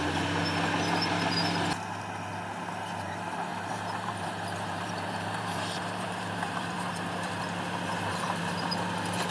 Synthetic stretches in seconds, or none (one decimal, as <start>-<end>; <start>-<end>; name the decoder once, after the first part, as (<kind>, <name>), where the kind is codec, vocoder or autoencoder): 3.5-7.4 (vocoder, BigVGAN v2); 7.9-8.6